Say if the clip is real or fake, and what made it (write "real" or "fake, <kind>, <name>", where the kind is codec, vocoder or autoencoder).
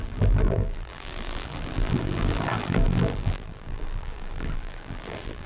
fake, vocoder, BigVGAN v2